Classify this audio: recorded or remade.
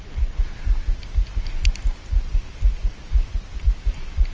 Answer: recorded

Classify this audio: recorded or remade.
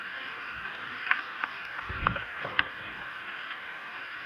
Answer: remade